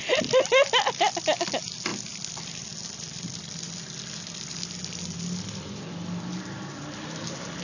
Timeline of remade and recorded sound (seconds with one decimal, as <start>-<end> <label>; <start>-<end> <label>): 0.0-7.6 recorded